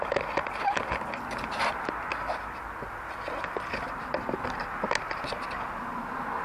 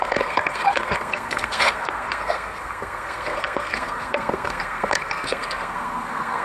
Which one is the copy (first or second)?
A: second